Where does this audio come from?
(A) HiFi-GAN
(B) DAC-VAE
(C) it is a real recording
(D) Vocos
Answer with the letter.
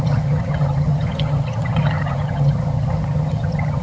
A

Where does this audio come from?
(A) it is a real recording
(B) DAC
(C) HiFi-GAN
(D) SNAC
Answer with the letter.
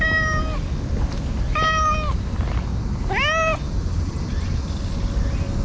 A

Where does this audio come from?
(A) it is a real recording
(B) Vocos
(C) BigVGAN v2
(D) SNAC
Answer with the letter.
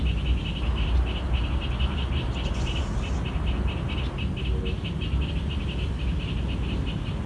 A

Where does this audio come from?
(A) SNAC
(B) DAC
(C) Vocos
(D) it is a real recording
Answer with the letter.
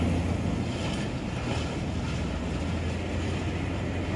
D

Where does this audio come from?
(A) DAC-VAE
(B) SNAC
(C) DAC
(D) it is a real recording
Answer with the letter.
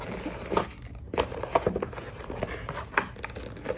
D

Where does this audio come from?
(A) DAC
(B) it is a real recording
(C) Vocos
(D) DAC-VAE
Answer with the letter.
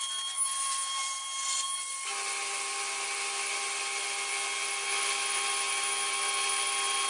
B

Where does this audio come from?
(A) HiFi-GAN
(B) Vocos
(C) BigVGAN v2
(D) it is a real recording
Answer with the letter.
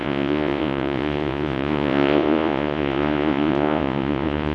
B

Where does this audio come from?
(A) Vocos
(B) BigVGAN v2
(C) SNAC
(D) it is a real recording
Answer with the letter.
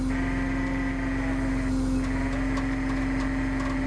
D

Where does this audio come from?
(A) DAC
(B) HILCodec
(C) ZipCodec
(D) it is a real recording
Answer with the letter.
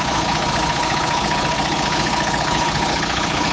B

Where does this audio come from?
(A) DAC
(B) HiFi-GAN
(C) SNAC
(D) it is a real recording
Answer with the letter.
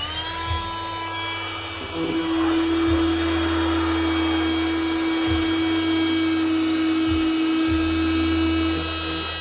D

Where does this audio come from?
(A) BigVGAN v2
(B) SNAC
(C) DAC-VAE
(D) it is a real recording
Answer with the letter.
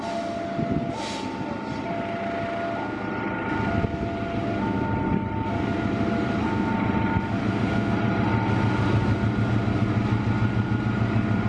D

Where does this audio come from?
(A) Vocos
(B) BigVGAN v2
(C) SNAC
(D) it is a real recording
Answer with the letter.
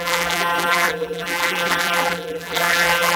B